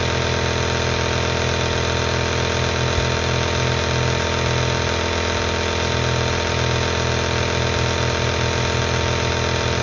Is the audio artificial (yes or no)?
no